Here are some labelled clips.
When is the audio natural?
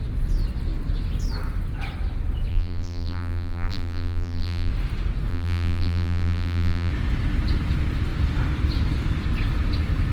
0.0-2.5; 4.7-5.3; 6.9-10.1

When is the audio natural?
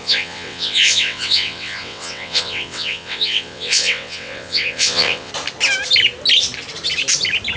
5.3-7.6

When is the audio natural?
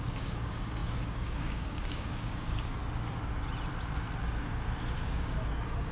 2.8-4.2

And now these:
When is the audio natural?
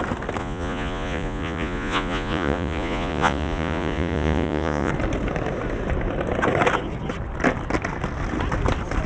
0.0-0.4; 4.9-9.1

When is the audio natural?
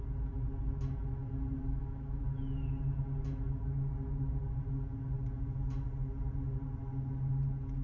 0.0-1.6; 2.2-7.8